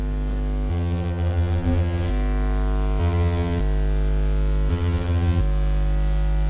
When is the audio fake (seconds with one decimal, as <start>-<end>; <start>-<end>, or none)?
0.7-2.1; 3.0-3.6; 4.7-5.4